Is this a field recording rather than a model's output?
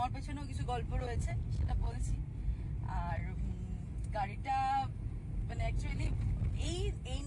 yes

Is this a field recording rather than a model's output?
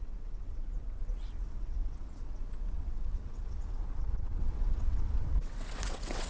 no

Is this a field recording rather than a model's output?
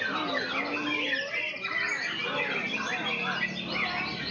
yes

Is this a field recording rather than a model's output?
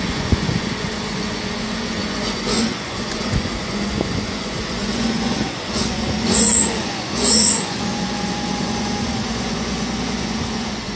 no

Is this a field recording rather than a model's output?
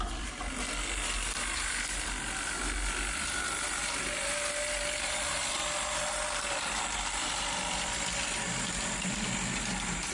no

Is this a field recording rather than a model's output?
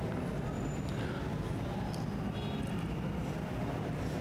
yes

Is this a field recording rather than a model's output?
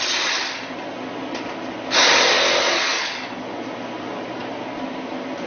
yes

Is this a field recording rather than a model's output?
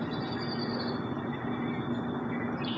yes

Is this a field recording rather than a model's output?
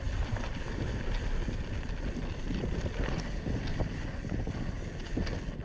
yes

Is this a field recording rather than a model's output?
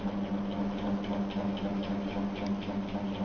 yes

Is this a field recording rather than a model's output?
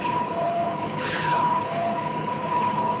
no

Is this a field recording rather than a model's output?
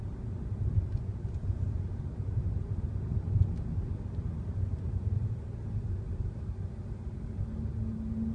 yes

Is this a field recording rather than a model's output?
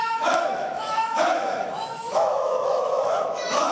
no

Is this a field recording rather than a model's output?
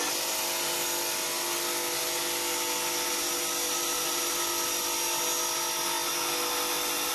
yes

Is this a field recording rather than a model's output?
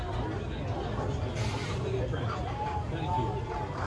yes